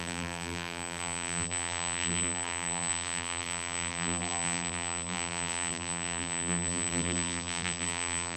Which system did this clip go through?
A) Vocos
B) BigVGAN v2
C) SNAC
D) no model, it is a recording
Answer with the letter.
B